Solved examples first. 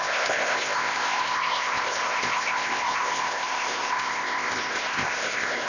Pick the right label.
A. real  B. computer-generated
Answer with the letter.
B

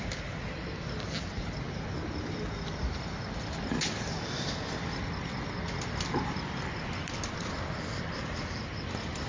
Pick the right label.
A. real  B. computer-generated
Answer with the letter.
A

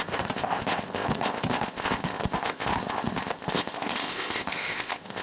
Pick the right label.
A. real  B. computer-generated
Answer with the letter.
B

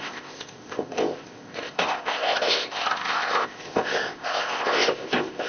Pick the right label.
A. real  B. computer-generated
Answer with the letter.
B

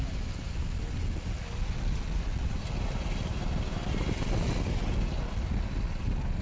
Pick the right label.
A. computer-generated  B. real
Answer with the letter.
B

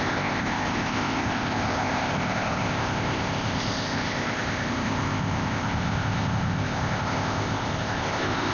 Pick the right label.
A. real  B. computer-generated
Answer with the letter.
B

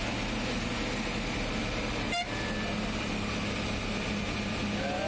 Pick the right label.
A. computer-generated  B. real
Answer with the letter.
B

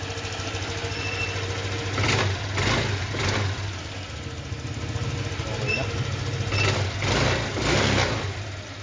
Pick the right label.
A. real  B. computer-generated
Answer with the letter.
A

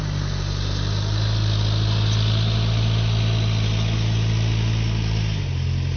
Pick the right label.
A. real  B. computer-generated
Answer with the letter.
A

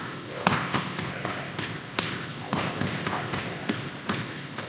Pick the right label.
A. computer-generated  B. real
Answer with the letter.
A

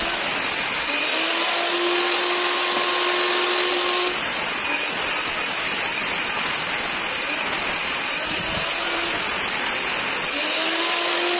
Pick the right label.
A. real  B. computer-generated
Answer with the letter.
A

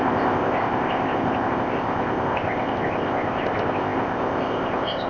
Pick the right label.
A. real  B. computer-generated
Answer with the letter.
B